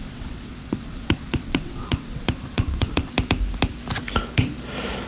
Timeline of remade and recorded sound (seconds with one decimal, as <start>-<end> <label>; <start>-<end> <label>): 0.0-3.1 remade; 3.1-5.1 recorded